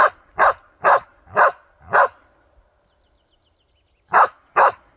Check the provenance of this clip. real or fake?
real